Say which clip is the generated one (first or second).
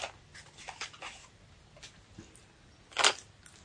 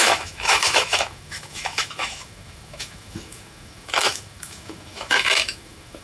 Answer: second